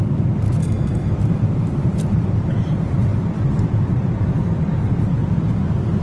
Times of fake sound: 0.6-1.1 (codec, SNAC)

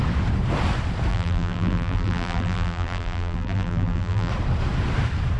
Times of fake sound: 1.1-4.3 (vocoder, BigVGAN v2)

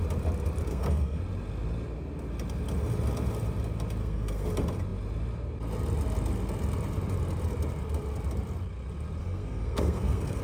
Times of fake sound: 0.7-1.2 (codec, SNAC); 4.0-4.5; 9.2-10.4

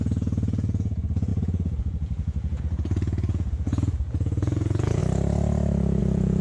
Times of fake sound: 0.0-5.0 (vocoder, Vocos); 6.0-6.4

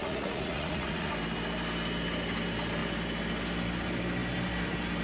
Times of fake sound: 0.0-1.1 (vocoder, Vocos)

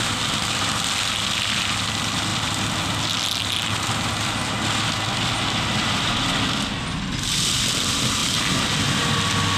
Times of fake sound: none